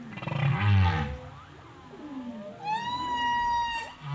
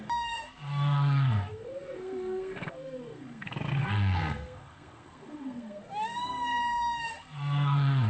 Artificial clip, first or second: second